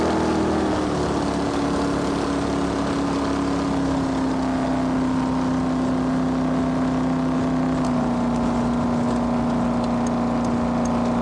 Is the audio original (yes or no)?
yes